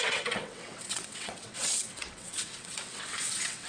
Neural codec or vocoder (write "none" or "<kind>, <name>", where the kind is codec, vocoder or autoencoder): vocoder, WaveNeXt